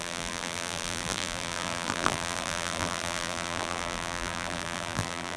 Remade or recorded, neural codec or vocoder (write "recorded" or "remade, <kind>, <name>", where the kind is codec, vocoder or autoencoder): remade, vocoder, BigVGAN v2